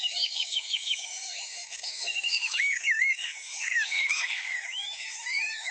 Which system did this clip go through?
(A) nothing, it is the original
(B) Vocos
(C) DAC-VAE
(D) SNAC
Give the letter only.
C